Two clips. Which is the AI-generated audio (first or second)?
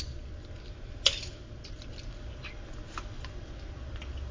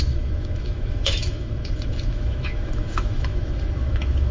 second